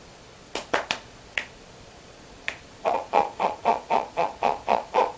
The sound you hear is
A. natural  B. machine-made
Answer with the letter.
B